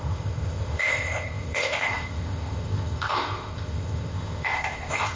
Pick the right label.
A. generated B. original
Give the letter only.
A